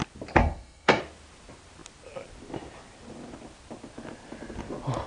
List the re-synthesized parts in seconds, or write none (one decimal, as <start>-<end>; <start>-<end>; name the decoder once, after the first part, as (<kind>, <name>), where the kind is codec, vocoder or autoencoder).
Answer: 0.4-1.0 (codec, SNAC)